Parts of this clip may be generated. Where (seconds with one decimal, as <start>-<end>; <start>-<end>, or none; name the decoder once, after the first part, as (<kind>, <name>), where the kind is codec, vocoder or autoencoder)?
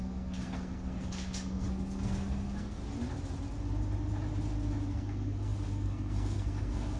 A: 0.0-2.8 (codec, SNAC); 4.9-7.0